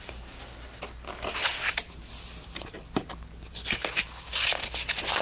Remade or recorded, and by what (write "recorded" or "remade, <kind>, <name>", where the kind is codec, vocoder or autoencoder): recorded